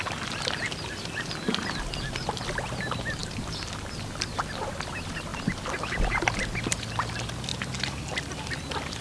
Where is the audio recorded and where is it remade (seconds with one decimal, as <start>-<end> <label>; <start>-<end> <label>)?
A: 0.0-3.2 recorded; 3.2-4.6 remade; 4.6-7.5 recorded; 7.5-9.0 remade